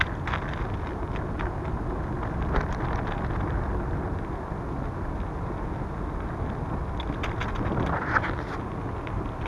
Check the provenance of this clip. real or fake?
real